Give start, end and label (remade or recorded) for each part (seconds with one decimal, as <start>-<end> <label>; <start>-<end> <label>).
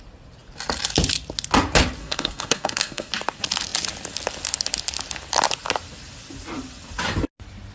0.0-2.0 recorded; 2.0-3.1 remade; 3.1-7.7 recorded